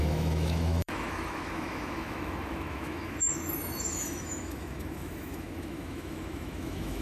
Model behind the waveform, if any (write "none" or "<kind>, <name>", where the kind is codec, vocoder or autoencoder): autoencoder, DAC-VAE